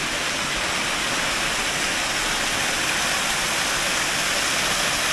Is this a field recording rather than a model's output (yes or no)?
yes